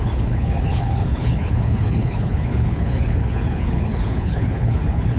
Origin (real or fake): fake